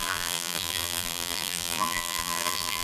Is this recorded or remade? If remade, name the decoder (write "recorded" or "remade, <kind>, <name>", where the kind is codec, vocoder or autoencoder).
remade, vocoder, BigVGAN v2